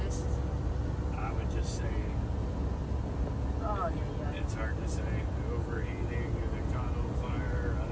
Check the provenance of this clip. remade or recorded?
recorded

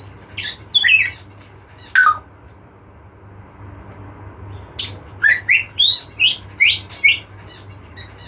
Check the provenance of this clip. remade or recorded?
recorded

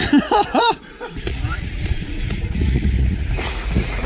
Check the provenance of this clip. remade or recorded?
remade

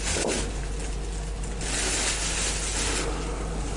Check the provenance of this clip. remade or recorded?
recorded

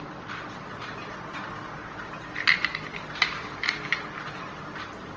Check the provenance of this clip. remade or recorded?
recorded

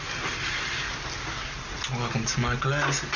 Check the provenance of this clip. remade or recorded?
recorded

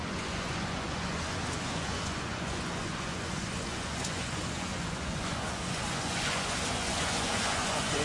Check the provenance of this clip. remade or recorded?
remade